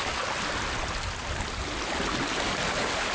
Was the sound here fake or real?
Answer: real